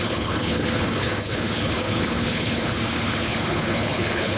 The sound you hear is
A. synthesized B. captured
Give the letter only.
A